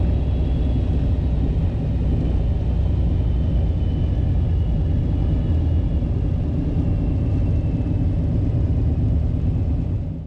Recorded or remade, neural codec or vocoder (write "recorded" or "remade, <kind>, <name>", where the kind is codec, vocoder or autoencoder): recorded